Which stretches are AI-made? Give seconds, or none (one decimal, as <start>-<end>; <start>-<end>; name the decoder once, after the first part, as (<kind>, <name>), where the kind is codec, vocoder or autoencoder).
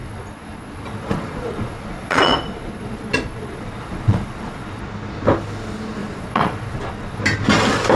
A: 0.0-4.8 (vocoder, Vocos); 6.0-7.2